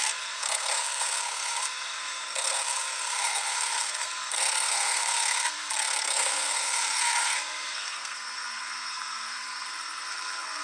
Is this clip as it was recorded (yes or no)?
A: no